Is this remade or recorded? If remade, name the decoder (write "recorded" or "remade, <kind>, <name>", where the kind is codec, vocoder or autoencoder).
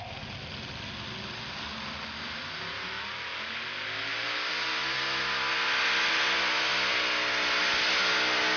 recorded